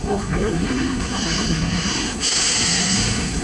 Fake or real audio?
fake